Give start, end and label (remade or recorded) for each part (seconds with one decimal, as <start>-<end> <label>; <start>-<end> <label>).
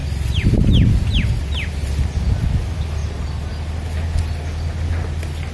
0.0-3.0 recorded; 3.0-3.5 remade; 3.5-5.5 recorded